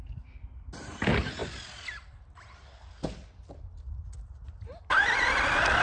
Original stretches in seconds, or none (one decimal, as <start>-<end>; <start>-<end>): 0.0-5.8